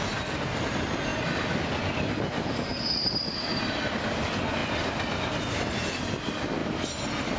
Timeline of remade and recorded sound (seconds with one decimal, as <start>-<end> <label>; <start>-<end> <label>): 0.0-7.4 recorded